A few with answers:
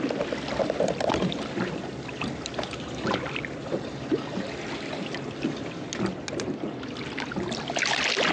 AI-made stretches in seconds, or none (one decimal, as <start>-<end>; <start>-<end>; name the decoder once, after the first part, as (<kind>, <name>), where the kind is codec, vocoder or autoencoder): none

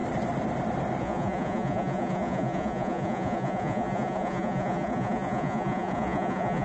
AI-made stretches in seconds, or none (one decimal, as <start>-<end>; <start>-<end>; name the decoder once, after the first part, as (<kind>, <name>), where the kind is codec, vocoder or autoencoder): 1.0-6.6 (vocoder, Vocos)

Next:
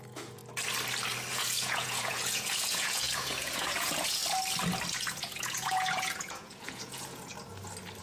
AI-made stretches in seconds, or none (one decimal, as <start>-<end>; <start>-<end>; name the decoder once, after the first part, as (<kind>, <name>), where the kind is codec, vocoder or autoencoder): 0.0-0.4 (vocoder, Vocos); 1.3-4.2; 4.9-7.3

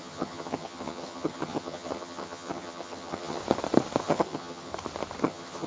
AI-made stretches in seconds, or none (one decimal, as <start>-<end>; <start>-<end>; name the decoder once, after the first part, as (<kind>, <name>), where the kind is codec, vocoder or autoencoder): 0.0-3.4 (vocoder, HiFi-GAN); 4.0-4.7; 5.2-5.7

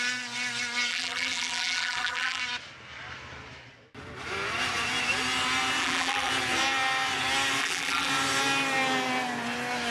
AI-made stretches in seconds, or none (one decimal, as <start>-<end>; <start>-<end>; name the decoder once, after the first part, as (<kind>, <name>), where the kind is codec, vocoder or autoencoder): 0.9-2.4 (vocoder, BigVGAN v2); 5.8-6.3; 7.6-8.1